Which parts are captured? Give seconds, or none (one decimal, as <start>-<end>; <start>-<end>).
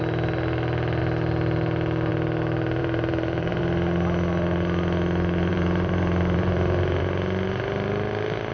0.0-2.8; 3.6-5.5; 7.0-8.5